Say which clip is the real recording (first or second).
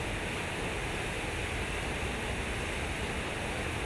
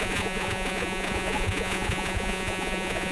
first